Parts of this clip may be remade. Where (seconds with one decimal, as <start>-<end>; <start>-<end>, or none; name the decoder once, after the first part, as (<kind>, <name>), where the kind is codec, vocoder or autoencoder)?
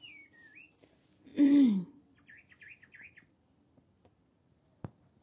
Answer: 1.3-2.0 (vocoder, BigVGAN v2)